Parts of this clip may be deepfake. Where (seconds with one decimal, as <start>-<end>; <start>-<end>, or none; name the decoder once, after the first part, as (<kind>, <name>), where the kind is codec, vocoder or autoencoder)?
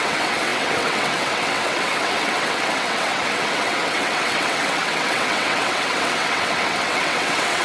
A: 0.0-7.6 (vocoder, WaveNeXt)